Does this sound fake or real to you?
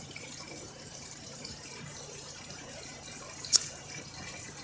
fake